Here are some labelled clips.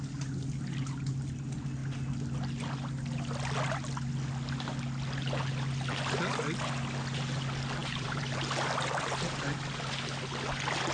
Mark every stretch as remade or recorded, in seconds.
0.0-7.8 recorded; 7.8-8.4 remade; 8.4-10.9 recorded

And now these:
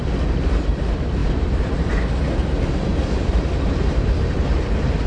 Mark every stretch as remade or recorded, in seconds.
0.0-1.2 recorded; 1.2-1.9 remade; 1.9-2.9 recorded; 2.9-5.1 remade